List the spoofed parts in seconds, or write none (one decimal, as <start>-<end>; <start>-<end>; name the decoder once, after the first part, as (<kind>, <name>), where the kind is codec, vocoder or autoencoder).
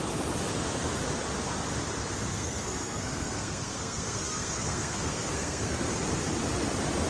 2.3-5.9 (codec, SNAC)